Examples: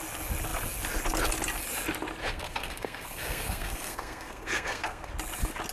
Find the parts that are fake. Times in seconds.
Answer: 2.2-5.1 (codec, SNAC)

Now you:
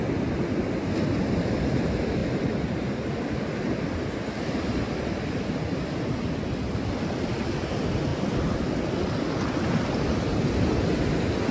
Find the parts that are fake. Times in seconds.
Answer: none

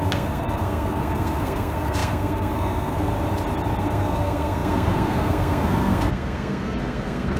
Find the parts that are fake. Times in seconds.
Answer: 0.0-3.1 (codec, SNAC); 3.8-7.4

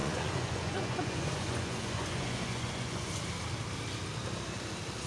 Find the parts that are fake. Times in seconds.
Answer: 0.0-3.1 (vocoder, Vocos)